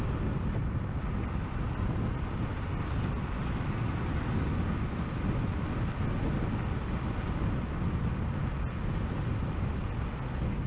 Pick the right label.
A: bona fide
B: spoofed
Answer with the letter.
A